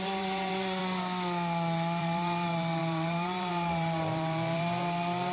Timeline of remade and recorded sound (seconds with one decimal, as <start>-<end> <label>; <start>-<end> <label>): 0.0-0.8 remade; 0.8-2.0 recorded; 2.0-5.3 remade